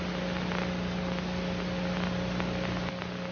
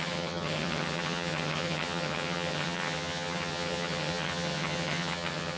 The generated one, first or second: second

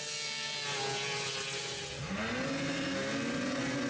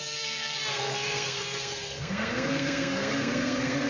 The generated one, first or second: second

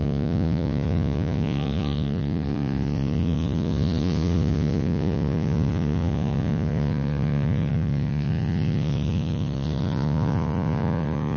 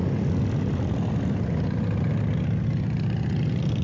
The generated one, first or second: first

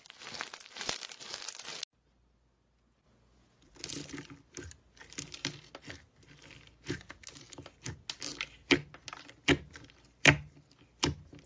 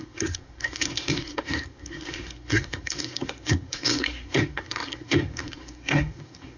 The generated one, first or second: second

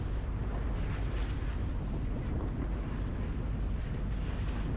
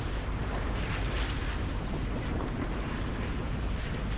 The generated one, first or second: second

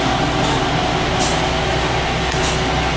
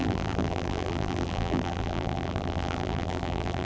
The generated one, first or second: second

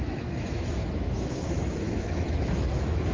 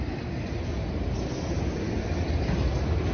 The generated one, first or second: first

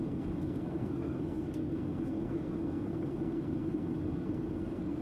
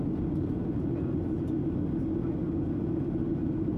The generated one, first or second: first